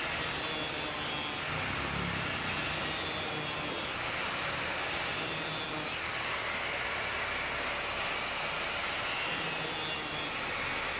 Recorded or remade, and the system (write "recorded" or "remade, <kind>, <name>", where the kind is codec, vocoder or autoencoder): recorded